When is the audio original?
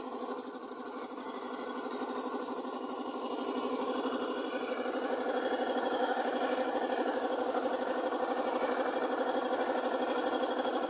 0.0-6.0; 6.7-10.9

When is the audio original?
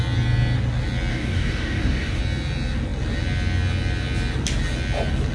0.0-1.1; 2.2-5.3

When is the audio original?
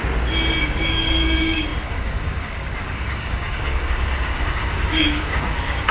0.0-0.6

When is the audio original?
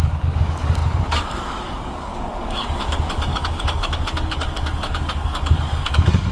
none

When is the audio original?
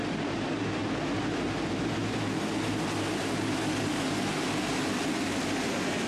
0.0-6.1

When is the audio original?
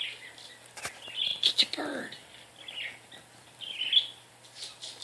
0.0-5.0